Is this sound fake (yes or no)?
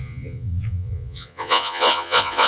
yes